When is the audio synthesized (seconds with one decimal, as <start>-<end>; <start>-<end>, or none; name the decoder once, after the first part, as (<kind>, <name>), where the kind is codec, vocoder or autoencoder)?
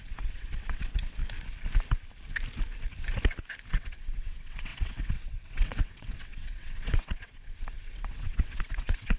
0.0-1.2 (vocoder, WaveNeXt); 3.7-9.2